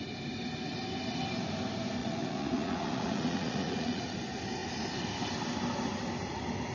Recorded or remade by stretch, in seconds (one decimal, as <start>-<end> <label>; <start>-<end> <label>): 0.0-2.0 recorded; 2.0-4.0 remade; 4.0-6.7 recorded